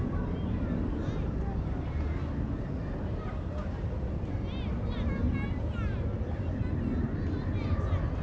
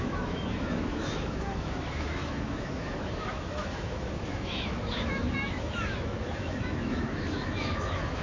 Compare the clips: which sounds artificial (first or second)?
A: second